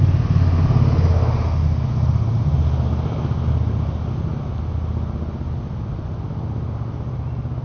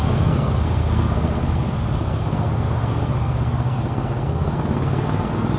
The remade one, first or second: second